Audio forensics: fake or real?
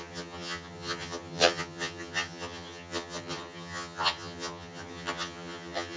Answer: fake